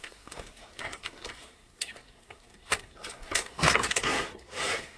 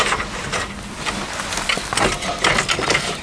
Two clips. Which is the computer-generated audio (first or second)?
first